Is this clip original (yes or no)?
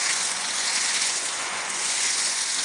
no